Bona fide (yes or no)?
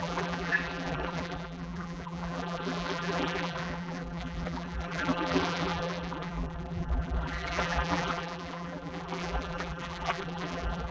no